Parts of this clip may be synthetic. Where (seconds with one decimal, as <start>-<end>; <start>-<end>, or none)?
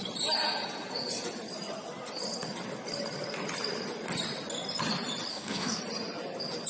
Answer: 5.3-5.8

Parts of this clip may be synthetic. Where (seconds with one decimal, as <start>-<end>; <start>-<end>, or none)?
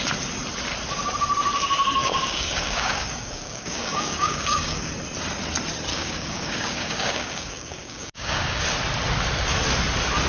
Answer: 2.0-4.9; 5.9-8.6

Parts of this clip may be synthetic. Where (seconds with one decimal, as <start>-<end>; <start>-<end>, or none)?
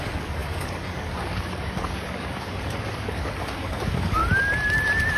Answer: 0.0-4.2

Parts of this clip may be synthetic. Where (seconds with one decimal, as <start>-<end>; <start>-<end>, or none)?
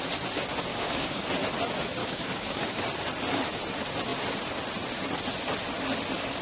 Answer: 0.7-1.2; 2.0-2.8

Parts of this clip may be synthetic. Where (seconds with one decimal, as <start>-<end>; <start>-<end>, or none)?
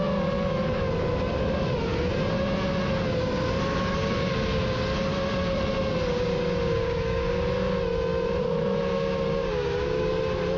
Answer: 6.1-7.3; 8.9-10.1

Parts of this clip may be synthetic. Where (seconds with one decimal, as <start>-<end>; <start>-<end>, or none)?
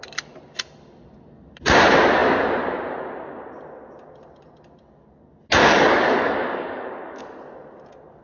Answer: 5.6-7.2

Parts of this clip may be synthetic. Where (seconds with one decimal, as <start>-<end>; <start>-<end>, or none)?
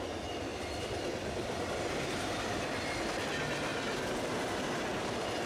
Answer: none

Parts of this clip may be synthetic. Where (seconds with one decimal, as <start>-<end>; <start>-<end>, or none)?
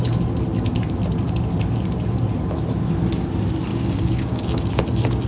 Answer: 3.7-4.8